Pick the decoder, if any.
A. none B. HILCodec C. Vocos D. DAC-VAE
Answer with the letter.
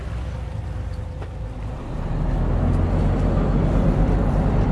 A